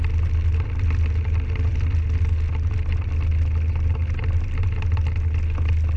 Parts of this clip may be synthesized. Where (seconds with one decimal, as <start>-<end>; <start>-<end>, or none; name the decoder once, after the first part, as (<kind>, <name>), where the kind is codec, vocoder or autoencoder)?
none